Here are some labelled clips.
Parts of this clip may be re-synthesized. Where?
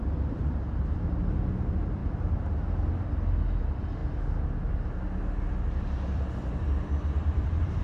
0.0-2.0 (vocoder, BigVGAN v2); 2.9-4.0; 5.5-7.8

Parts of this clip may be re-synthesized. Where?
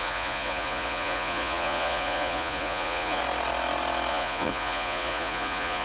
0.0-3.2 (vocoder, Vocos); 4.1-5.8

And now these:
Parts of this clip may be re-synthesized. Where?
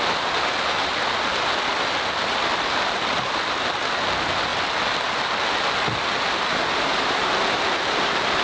none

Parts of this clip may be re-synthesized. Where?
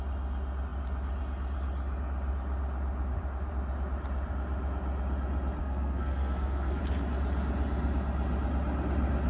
5.6-6.8 (codec, SNAC)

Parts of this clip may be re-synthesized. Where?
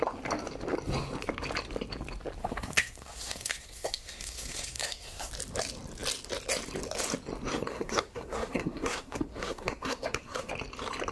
2.4-5.3 (codec, SNAC); 7.7-10.5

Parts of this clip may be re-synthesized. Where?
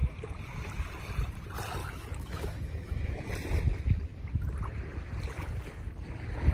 1.8-3.3 (autoencoder, DAC-VAE)